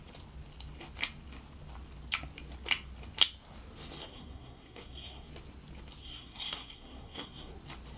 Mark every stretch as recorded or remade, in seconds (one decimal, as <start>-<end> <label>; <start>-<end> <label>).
0.0-4.0 recorded; 4.0-5.3 remade; 5.3-6.0 recorded; 6.0-7.5 remade; 7.5-8.0 recorded